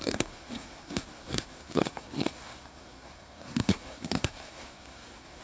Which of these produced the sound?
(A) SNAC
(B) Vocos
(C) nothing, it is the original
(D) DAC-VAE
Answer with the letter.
A